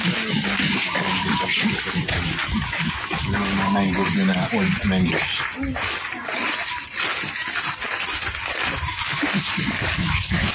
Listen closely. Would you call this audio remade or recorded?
recorded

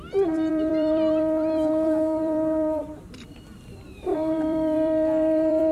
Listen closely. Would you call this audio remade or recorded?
remade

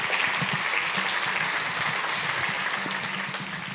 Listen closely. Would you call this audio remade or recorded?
recorded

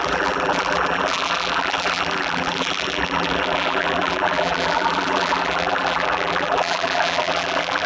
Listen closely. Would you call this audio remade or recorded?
remade